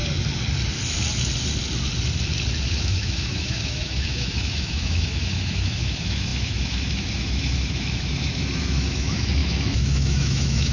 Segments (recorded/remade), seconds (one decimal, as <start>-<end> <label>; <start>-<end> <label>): 0.0-2.6 recorded; 2.6-10.7 remade